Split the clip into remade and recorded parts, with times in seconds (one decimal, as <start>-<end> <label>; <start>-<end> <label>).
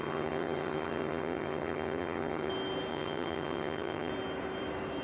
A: 0.0-2.5 remade; 2.5-2.9 recorded; 2.9-4.1 remade; 4.1-5.0 recorded